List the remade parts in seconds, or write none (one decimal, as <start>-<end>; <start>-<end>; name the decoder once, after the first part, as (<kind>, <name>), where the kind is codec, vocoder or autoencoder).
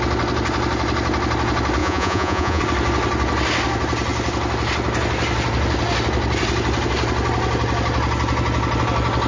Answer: 1.8-2.6 (vocoder, Vocos)